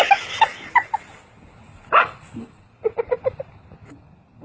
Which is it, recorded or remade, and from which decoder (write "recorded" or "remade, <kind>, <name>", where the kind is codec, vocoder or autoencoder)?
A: recorded